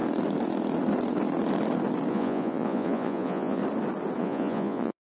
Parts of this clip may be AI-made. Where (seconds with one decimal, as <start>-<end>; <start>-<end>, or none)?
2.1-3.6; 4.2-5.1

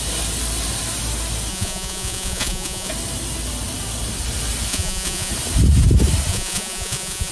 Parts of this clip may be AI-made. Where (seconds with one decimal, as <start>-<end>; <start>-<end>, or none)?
1.5-2.9; 4.7-5.3; 6.3-7.3

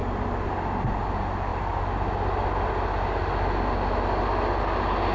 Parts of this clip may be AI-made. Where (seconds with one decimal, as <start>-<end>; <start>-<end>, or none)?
none

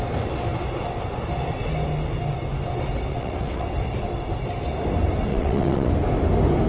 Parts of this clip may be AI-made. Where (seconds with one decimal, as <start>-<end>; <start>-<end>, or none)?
3.1-3.8; 5.3-5.9